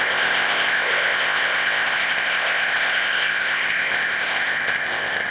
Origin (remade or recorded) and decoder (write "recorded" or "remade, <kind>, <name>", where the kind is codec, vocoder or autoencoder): remade, codec, ZipCodec